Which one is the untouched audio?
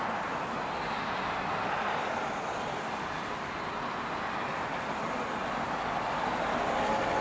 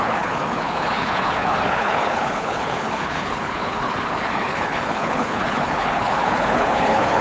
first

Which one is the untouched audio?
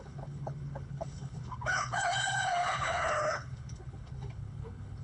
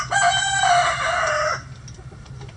second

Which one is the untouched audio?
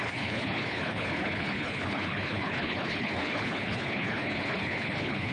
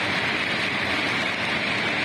second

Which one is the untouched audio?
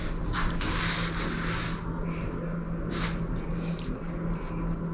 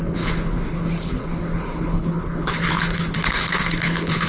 first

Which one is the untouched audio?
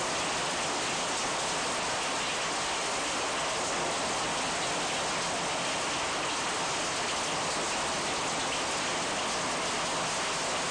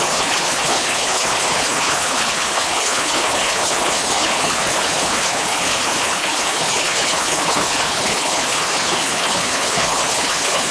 first